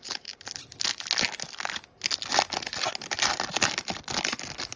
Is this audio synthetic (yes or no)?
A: no